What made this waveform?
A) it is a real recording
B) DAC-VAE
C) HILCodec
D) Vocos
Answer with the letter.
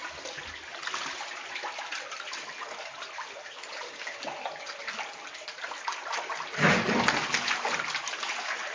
A